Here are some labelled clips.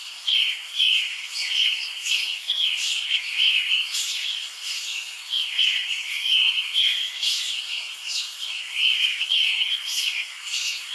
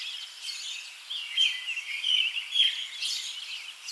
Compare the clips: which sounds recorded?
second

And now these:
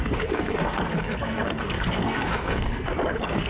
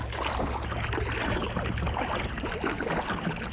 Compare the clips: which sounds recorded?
second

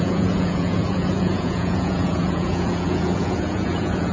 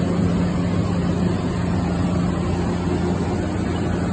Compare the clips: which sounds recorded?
second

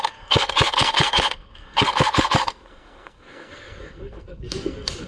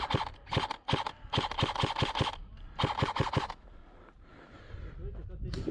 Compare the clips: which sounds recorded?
second